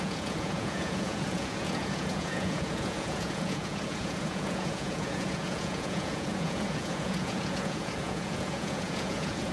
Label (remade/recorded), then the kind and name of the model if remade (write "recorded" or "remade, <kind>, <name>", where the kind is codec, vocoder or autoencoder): remade, vocoder, Vocos